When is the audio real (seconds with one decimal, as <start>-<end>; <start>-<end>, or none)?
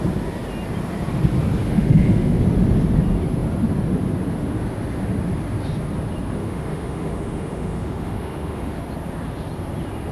0.0-1.6; 2.4-6.4; 8.8-10.1